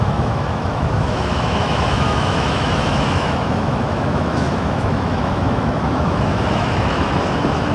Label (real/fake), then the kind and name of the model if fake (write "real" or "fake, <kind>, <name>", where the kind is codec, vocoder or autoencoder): fake, autoencoder, DAC-VAE